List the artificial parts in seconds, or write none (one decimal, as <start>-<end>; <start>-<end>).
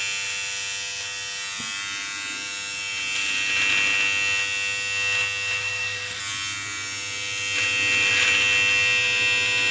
5.6-6.2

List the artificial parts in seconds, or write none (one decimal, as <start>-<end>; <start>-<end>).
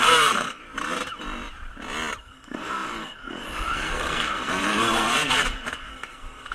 0.0-0.6; 2.2-6.5